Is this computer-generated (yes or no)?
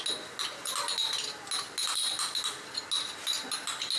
no